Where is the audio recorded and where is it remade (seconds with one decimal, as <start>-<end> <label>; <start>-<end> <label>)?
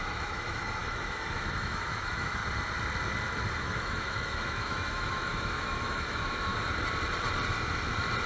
0.0-2.4 remade; 2.4-3.6 recorded; 3.6-6.5 remade; 6.5-8.3 recorded